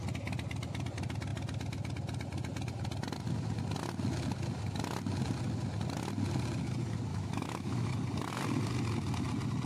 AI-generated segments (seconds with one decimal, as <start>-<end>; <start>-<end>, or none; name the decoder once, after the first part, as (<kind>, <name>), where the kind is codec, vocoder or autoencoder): 7.1-7.9 (autoencoder, DAC-VAE)